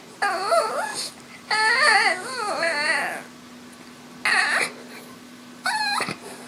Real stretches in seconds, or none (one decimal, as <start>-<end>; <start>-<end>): 0.0-6.5